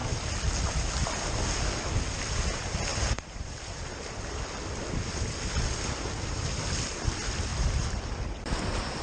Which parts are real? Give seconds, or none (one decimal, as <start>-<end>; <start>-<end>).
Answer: 0.0-2.9; 3.5-7.5; 8.2-9.0